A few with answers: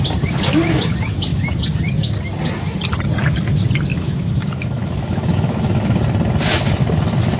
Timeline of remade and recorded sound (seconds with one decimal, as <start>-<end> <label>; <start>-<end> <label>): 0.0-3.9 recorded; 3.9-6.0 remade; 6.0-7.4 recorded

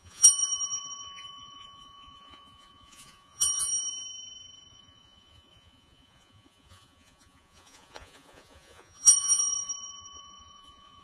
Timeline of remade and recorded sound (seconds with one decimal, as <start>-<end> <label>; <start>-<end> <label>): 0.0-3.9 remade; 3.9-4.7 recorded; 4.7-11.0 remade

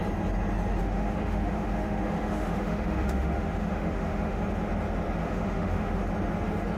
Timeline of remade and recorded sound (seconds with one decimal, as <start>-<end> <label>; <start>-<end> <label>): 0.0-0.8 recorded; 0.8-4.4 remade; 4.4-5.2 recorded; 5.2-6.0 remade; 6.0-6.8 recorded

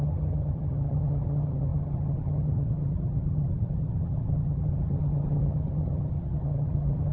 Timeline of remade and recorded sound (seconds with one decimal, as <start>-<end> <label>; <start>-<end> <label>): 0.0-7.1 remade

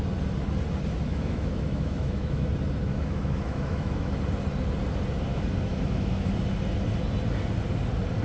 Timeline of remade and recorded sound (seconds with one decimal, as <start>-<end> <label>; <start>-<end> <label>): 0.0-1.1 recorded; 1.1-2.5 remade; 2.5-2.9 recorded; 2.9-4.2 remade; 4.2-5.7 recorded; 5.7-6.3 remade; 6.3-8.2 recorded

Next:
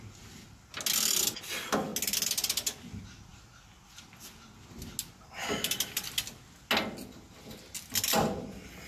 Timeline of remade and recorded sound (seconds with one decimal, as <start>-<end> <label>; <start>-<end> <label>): 0.0-8.9 recorded

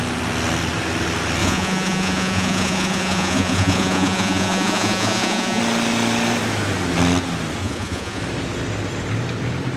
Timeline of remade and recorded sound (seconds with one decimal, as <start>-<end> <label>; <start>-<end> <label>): 0.0-1.4 recorded; 1.4-5.6 remade; 5.6-7.6 recorded; 7.6-8.2 remade; 8.2-9.8 recorded